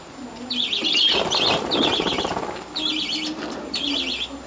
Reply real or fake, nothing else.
real